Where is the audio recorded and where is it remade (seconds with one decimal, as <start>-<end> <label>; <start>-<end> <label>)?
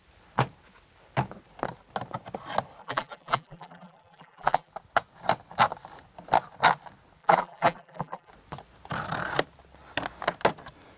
0.0-2.8 recorded; 2.8-4.7 remade; 4.7-7.2 recorded; 7.2-8.3 remade; 8.3-11.0 recorded